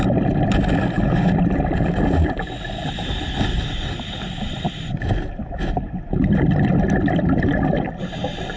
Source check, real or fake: fake